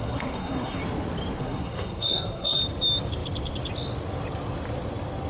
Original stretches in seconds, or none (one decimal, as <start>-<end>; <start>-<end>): 0.8-1.4; 2.6-5.3